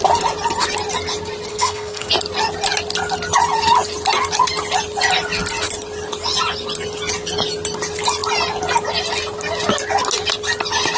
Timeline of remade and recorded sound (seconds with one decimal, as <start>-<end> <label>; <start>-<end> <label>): 0.0-1.5 recorded; 1.5-2.1 remade; 2.1-11.0 recorded